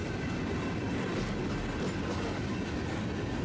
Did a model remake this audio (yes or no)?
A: no